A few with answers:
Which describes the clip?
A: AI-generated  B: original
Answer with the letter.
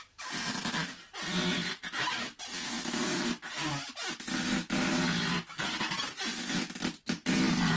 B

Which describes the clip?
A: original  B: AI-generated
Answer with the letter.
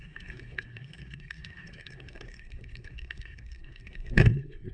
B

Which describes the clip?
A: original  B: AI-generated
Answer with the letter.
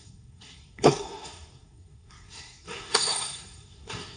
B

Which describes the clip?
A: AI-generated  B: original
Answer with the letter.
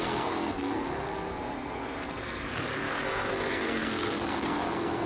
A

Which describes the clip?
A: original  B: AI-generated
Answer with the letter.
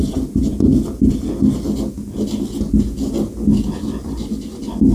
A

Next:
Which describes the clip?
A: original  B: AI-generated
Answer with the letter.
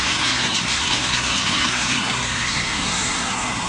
B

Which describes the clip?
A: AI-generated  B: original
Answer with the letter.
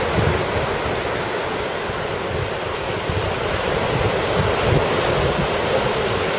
B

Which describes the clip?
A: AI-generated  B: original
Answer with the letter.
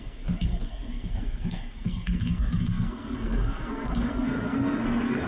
A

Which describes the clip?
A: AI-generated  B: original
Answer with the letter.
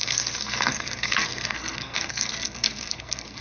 A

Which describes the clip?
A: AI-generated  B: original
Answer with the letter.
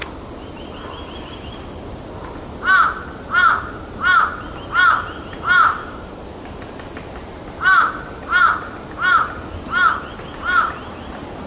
B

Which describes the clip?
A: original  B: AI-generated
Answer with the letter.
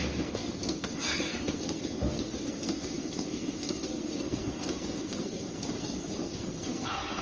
B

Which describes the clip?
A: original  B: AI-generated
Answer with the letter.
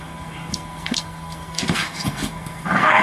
B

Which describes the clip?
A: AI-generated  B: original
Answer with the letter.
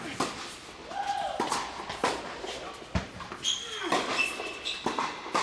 B